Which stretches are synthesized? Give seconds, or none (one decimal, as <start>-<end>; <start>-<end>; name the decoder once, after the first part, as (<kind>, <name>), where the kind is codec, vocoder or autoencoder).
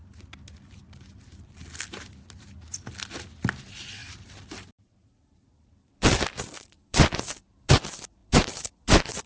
4.0-7.7 (vocoder, BigVGAN v2); 8.2-9.3